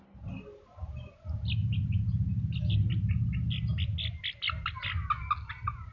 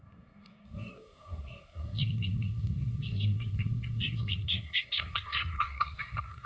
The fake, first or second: second